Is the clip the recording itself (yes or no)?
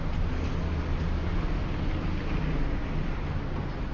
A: yes